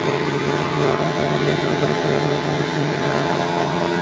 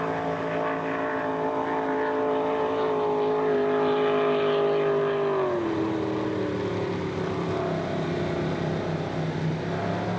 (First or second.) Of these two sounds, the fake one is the first